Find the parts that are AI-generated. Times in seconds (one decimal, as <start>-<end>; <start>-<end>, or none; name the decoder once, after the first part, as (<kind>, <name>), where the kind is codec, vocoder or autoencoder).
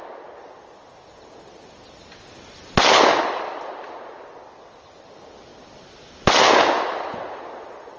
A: none